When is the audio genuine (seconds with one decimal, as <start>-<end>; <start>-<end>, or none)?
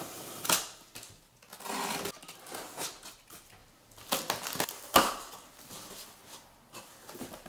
0.0-7.5